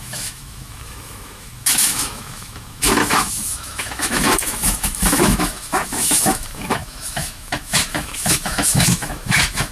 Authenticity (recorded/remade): remade